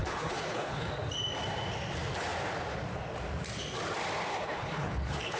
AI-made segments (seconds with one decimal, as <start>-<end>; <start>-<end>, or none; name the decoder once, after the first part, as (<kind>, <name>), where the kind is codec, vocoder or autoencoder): 0.0-0.9 (codec, HILCodec); 4.3-5.4